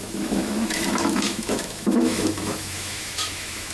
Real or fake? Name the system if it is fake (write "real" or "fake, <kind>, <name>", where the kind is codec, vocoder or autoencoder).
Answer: fake, autoencoder, DAC-VAE